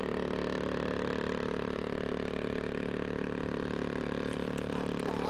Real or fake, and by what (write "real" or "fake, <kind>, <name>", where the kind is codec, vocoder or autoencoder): fake, vocoder, BigVGAN v2